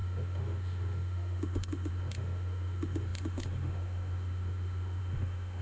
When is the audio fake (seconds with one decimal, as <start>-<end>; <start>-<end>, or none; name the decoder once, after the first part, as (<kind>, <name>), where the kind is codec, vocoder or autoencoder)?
0.0-5.6 (autoencoder, DAC-VAE)